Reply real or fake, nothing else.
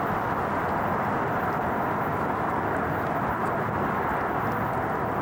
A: real